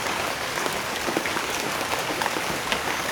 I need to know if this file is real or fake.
fake